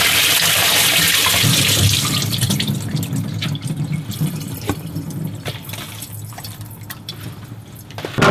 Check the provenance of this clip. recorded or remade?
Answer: remade